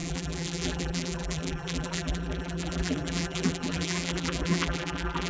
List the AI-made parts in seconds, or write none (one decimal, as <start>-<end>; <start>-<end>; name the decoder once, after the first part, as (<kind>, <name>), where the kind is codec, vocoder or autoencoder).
0.0-5.3 (vocoder, BigVGAN v2)